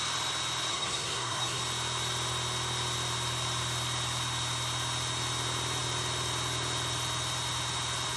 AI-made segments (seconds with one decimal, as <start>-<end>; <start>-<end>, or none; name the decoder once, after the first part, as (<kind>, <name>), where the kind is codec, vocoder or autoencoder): 0.7-1.6 (codec, SNAC)